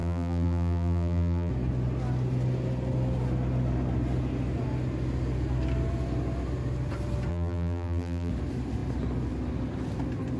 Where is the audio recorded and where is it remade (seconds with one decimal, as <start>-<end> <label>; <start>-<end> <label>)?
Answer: 0.0-1.5 remade; 1.5-7.3 recorded; 7.3-8.3 remade; 8.3-10.4 recorded